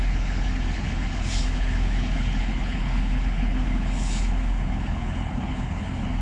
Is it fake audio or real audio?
fake